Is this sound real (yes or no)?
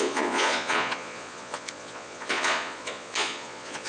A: no